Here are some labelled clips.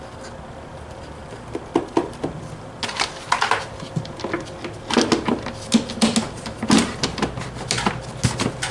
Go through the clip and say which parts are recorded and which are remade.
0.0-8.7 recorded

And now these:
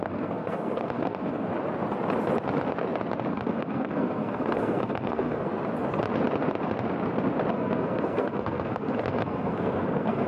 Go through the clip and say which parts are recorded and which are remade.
0.0-1.5 remade; 1.5-3.3 recorded; 3.3-5.5 remade; 5.5-7.5 recorded; 7.5-10.3 remade

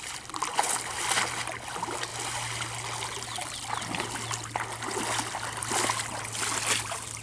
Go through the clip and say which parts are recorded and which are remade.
0.0-7.2 recorded

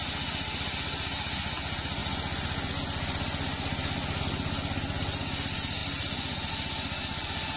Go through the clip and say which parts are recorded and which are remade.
0.0-7.6 recorded

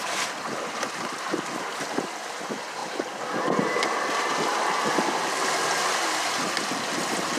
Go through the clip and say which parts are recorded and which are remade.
0.0-7.4 recorded